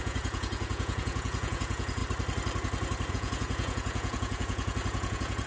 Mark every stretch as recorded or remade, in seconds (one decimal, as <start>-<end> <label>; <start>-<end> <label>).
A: 0.0-2.0 remade; 2.0-3.1 recorded; 3.1-5.5 remade